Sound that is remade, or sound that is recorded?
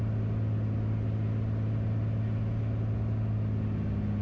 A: recorded